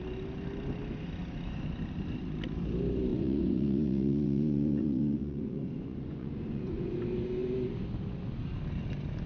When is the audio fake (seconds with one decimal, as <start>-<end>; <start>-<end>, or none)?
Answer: 3.1-7.0